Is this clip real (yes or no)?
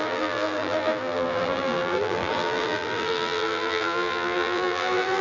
no